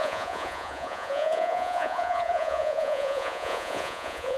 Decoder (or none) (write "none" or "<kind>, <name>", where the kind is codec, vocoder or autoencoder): vocoder, Vocos